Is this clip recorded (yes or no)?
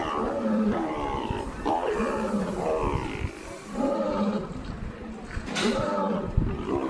no